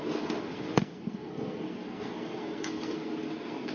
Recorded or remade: remade